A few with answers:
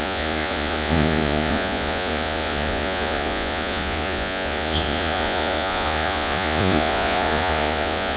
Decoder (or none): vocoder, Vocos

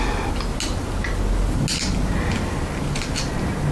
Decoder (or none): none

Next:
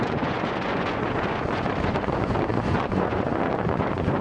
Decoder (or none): vocoder, Vocos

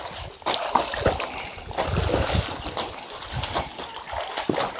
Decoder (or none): none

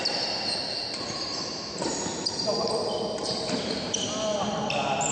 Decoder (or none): none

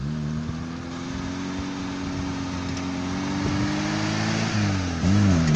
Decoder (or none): none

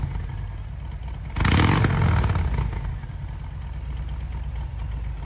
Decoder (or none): none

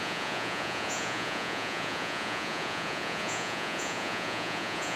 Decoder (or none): vocoder, Vocos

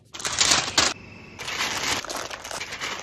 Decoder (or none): none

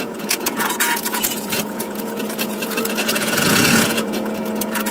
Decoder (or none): vocoder, Vocos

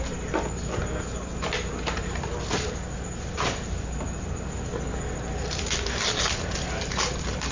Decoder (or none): none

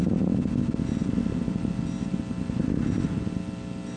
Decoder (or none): none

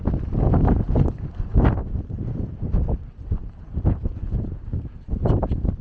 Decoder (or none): none